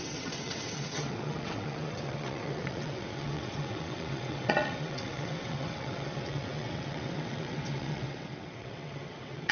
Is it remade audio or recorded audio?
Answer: remade